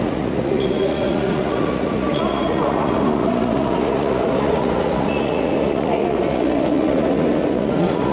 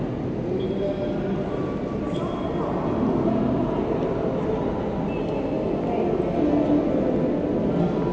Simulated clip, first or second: first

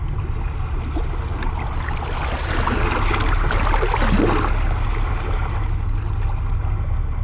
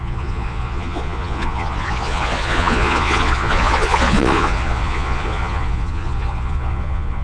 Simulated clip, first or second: second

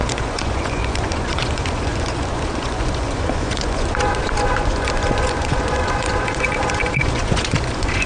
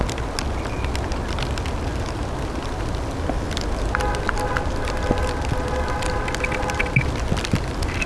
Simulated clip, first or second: first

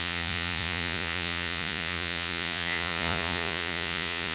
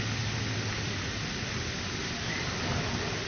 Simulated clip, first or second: first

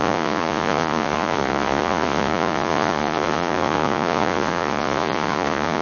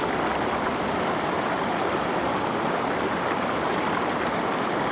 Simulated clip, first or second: first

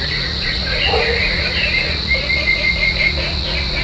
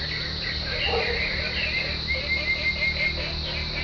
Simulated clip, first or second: first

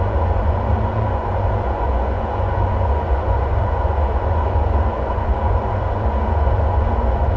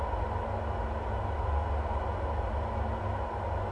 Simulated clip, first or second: first